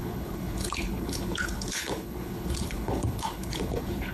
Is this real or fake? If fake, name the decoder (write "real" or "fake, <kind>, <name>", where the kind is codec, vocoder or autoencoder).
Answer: fake, codec, HILCodec